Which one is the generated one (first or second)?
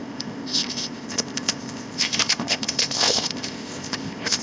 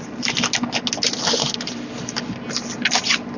first